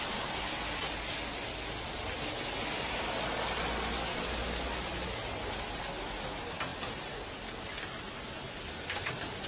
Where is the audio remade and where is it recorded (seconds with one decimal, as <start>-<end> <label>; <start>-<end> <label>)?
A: 0.0-9.5 recorded